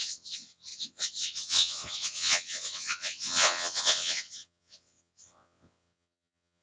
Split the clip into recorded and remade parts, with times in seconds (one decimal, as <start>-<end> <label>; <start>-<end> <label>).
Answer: 0.0-6.6 remade